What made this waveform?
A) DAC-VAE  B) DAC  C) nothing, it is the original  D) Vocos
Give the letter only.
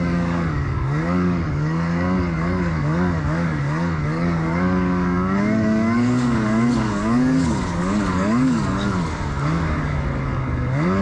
B